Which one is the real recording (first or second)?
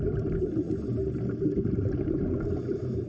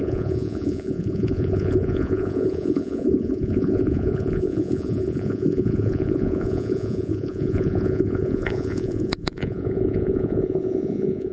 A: first